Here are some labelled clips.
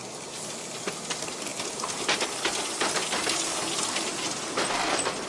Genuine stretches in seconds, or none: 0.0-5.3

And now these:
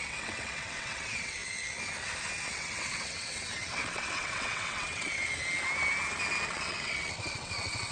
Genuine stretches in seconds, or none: 1.4-2.5; 5.3-6.5

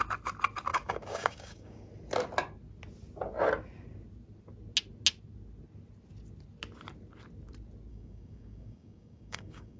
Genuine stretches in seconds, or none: 0.0-0.7; 1.9-7.9

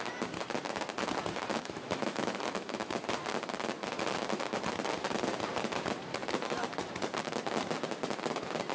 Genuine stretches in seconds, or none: 0.0-1.5; 2.9-8.7

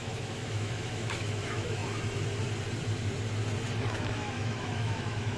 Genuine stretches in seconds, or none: 1.8-3.8

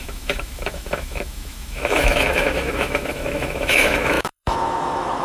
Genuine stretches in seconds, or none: none

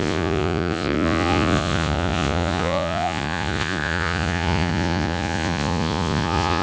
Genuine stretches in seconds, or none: none

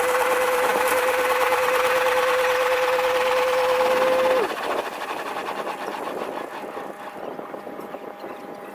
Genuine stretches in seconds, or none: 0.0-8.7